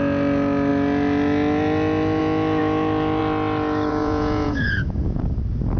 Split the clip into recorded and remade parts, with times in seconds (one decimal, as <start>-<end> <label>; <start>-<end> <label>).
0.0-3.9 recorded; 3.9-5.2 remade; 5.2-5.8 recorded